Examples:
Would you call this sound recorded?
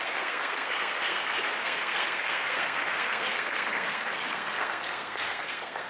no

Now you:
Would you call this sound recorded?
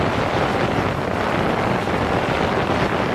yes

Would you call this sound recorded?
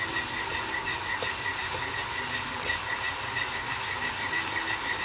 yes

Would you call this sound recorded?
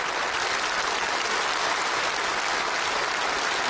yes